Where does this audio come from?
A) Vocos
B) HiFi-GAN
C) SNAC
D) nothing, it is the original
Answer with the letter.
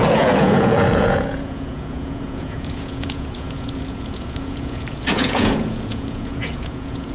A